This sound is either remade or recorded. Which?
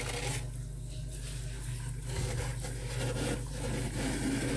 recorded